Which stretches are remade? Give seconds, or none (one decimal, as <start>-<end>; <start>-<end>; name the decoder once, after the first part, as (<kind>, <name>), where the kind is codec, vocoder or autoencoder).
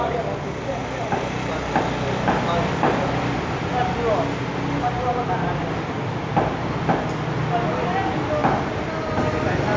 none